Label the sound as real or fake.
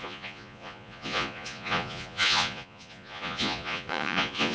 fake